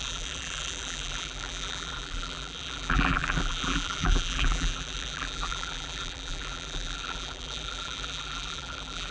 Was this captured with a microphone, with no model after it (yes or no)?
no